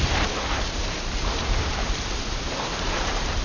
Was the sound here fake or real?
fake